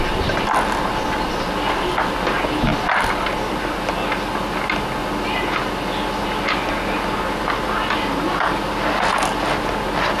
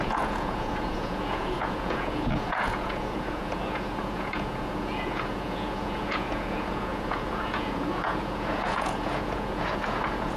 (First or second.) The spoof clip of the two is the second